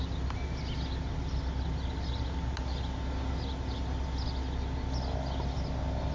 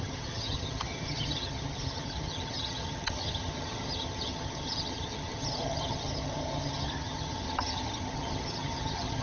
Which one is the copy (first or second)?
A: second